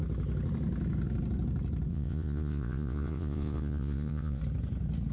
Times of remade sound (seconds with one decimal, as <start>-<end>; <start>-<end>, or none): 1.9-4.4